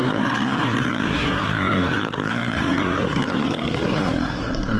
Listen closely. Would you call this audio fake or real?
fake